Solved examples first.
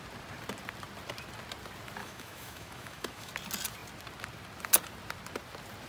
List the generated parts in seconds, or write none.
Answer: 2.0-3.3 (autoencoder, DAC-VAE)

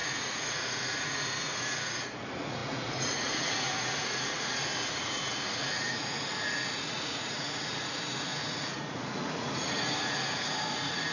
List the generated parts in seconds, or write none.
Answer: 0.0-11.1 (vocoder, Vocos)

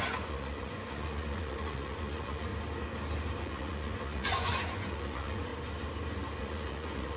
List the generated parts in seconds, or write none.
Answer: 0.0-2.5 (vocoder, Vocos); 3.4-5.5; 6.4-7.2

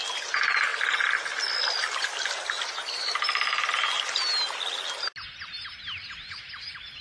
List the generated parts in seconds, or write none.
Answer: none